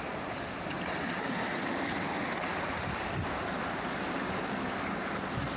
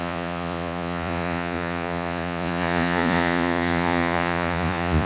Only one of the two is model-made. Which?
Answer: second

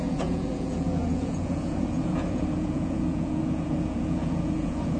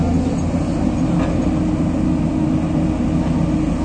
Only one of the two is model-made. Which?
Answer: first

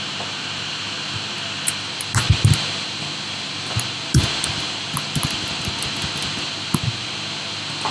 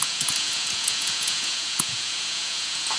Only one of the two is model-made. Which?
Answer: second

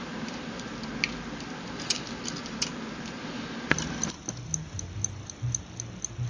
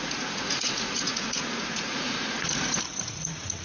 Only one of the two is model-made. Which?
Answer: second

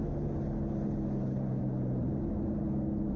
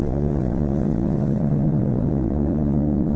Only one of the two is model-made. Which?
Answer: second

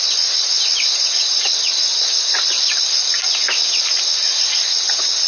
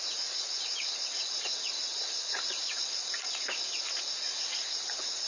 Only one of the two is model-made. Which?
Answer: second